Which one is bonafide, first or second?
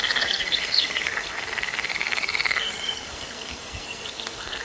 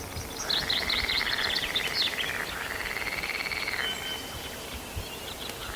second